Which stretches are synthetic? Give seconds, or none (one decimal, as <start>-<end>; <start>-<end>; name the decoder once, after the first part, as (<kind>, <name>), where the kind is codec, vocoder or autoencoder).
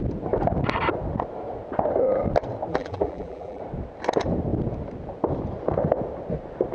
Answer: 2.7-3.6 (vocoder, BigVGAN v2)